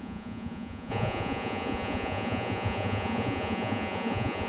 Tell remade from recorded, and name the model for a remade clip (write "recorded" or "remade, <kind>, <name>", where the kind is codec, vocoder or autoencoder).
remade, vocoder, Vocos